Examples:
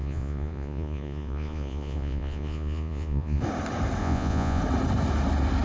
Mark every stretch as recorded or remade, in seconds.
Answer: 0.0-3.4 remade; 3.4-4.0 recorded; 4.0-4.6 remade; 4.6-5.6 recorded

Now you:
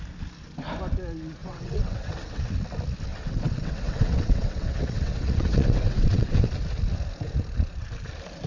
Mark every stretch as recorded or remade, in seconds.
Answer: 0.0-1.4 recorded; 1.4-2.4 remade; 2.4-3.1 recorded; 3.1-6.5 remade; 6.5-8.5 recorded

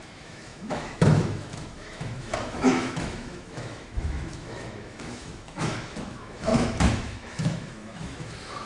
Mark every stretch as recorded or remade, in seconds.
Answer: 0.0-8.7 remade

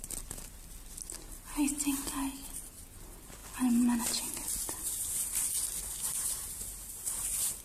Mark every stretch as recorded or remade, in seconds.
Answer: 0.0-7.6 recorded